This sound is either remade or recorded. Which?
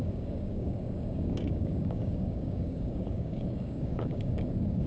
remade